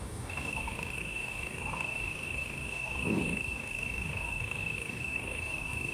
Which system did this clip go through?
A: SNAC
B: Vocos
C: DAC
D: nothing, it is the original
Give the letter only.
C